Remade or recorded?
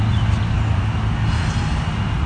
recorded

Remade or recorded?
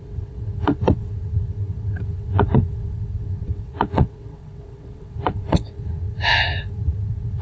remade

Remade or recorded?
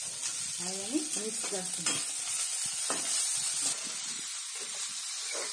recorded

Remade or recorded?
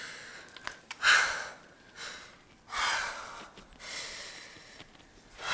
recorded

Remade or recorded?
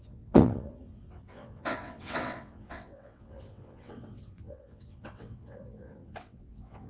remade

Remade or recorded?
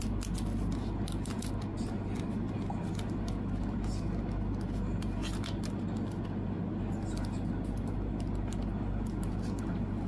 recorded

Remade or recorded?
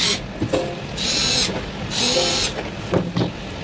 recorded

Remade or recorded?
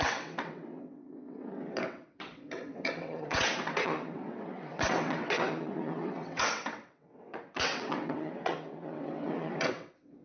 remade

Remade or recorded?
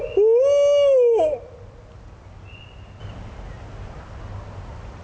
recorded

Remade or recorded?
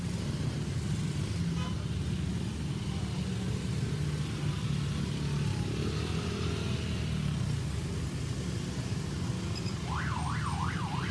recorded